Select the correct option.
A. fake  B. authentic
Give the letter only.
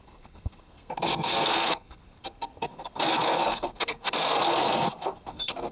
A